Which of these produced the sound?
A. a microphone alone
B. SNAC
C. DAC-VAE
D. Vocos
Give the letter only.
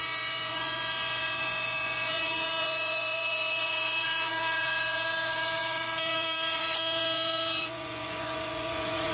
D